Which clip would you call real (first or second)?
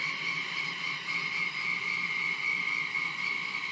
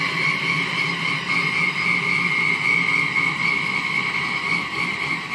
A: second